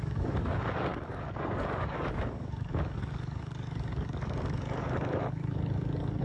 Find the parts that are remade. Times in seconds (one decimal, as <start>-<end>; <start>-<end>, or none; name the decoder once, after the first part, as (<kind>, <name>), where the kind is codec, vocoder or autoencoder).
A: 0.0-6.2 (codec, DAC)